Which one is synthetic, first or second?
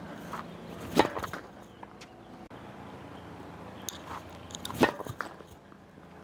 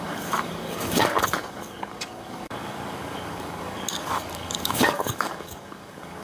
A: second